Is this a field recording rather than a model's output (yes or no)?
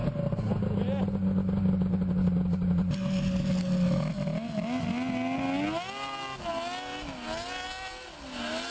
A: yes